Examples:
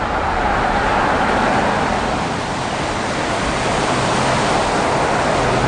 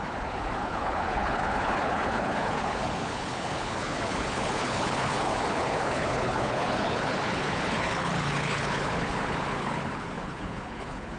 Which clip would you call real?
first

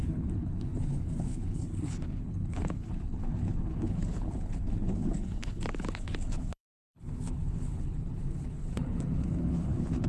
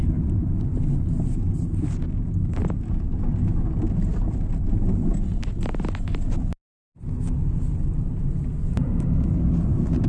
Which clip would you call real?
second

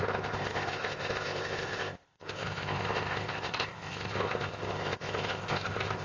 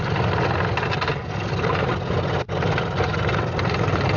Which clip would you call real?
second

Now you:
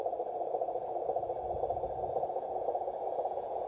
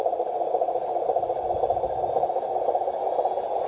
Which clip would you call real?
second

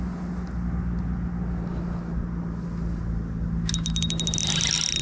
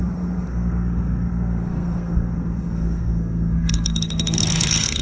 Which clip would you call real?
first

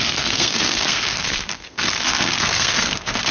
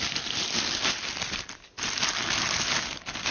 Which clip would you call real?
second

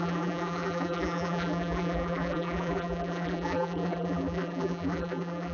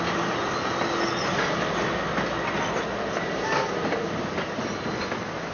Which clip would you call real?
second